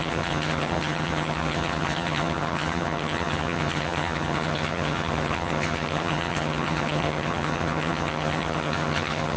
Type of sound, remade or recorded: remade